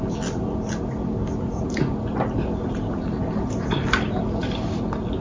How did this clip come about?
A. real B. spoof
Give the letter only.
A